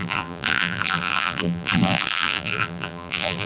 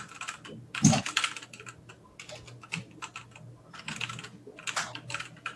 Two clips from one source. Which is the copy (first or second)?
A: first